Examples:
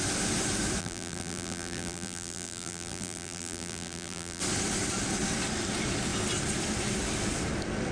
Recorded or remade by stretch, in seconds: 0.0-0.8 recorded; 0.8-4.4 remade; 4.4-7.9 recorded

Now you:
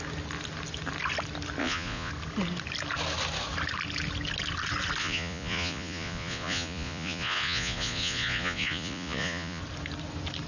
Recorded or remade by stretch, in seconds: 0.0-1.6 recorded; 1.6-2.1 remade; 2.1-5.0 recorded; 5.0-9.6 remade; 9.6-10.5 recorded

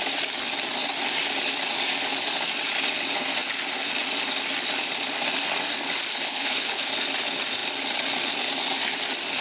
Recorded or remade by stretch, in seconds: 0.0-6.1 recorded; 6.1-6.9 remade; 6.9-9.4 recorded